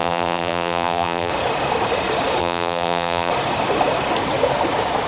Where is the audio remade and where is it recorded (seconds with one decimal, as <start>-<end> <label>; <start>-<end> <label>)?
0.0-1.3 remade; 1.3-2.4 recorded; 2.4-3.3 remade; 3.3-5.1 recorded